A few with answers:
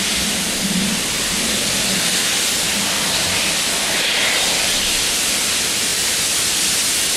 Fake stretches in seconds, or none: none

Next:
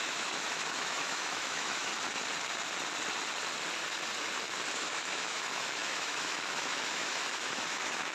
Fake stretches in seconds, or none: 0.0-1.9 (autoencoder, DAC-VAE); 4.7-8.1